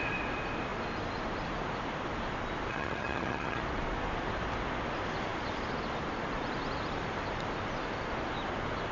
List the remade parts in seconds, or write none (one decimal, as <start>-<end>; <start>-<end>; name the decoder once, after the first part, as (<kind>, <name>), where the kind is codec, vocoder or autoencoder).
2.7-3.6 (vocoder, HiFi-GAN)